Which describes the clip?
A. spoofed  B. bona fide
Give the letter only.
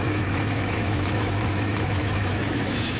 A